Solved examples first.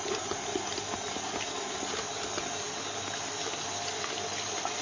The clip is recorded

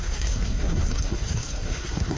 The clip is remade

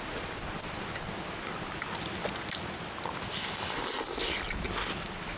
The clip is recorded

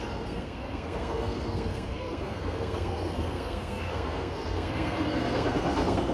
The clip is remade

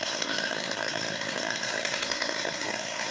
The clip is remade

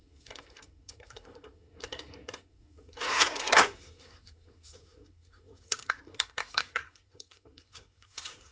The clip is remade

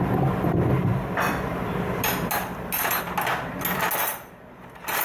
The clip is recorded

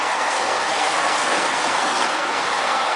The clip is remade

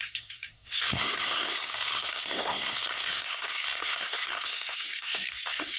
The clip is remade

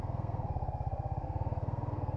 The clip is remade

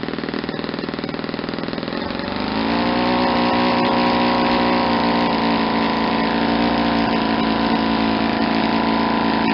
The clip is recorded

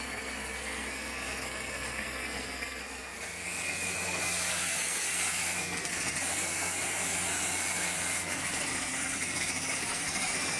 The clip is remade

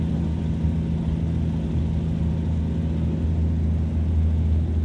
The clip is recorded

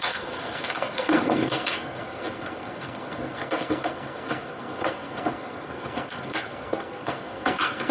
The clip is remade